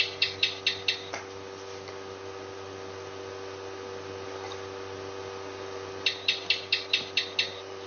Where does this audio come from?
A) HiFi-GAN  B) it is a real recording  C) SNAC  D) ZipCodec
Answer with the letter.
B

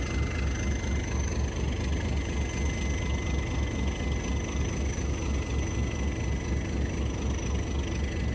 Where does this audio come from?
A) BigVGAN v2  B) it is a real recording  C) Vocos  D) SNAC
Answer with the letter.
B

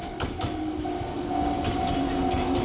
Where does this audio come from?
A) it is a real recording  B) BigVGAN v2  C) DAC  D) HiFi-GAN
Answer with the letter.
A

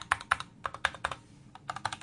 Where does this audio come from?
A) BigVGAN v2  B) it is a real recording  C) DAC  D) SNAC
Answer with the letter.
B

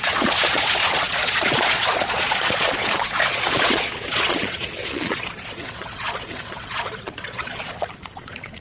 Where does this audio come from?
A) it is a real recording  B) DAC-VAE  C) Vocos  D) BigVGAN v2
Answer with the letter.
C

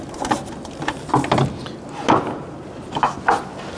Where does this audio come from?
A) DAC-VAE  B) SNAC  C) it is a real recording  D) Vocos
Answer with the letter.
C